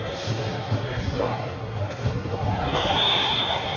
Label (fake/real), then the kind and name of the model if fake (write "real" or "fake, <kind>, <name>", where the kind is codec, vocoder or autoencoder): fake, codec, SNAC